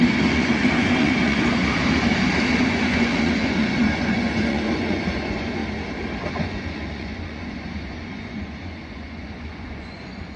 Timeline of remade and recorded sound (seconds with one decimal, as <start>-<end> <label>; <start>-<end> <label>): 0.0-1.6 remade; 1.6-2.6 recorded; 2.6-5.6 remade; 5.6-6.3 recorded; 6.3-10.4 remade